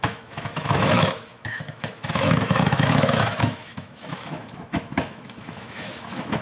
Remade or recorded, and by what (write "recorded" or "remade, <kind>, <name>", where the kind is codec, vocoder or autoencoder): remade, autoencoder, DAC-VAE